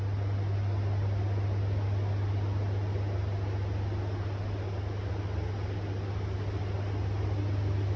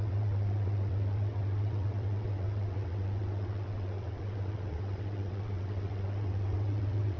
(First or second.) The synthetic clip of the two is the second